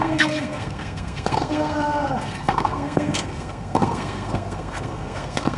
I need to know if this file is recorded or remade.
remade